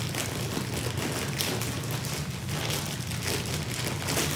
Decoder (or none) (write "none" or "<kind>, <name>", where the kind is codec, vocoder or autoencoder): none